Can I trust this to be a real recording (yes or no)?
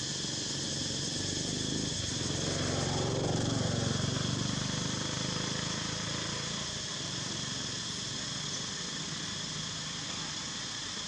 yes